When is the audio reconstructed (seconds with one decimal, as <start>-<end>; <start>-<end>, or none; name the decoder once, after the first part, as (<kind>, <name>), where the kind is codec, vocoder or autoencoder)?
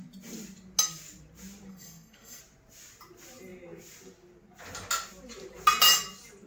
1.7-2.4 (codec, SNAC)